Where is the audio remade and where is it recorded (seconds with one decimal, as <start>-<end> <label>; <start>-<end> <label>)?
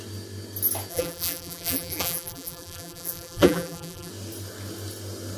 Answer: 0.0-0.9 recorded; 0.9-4.1 remade; 4.1-5.4 recorded